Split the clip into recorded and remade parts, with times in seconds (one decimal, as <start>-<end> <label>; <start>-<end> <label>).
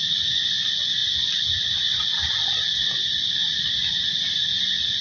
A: 0.0-5.0 recorded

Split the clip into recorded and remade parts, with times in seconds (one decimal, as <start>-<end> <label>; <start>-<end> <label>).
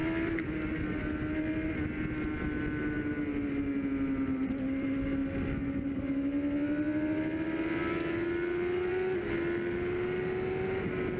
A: 0.0-11.2 recorded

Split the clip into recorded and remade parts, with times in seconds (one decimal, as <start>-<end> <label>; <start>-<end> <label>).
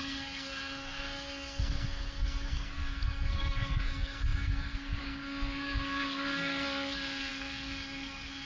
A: 0.0-8.4 remade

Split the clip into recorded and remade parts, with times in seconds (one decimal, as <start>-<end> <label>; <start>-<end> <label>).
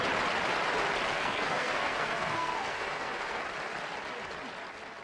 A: 0.0-1.1 recorded; 1.1-3.4 remade; 3.4-5.0 recorded